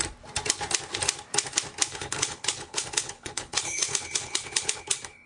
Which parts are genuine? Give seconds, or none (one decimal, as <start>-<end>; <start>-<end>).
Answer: 0.0-1.9